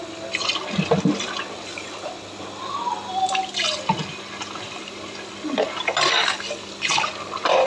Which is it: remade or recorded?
recorded